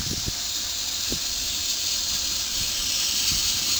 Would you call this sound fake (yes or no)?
yes